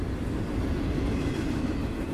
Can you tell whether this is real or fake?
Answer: fake